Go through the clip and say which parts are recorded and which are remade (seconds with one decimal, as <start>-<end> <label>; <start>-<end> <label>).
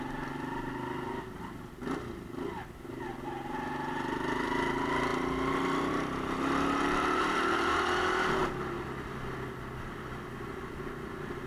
0.0-11.5 recorded